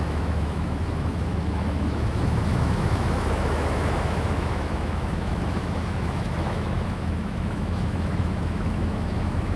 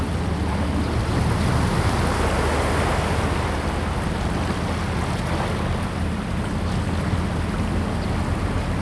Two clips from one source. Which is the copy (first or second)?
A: first